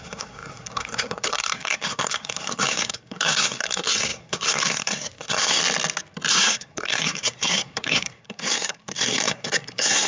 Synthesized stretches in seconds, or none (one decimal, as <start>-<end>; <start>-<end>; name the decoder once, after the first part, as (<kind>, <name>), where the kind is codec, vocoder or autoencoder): 0.0-5.6 (codec, SNAC); 6.3-10.1